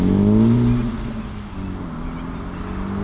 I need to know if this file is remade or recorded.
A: recorded